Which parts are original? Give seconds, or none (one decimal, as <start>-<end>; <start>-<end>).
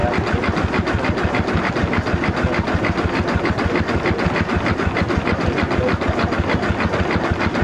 0.0-7.6